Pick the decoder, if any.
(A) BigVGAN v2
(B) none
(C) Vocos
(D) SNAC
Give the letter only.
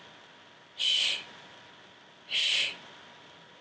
B